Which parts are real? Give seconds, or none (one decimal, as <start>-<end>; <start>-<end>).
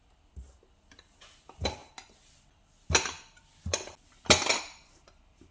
0.0-5.5